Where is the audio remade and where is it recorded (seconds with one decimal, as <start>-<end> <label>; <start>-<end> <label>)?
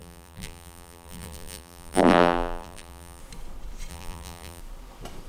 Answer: 0.0-3.2 remade; 3.2-3.9 recorded; 3.9-4.6 remade; 4.6-5.3 recorded